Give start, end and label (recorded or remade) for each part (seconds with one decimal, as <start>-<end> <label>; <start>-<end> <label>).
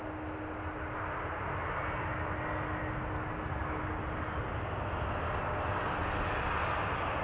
0.0-7.2 recorded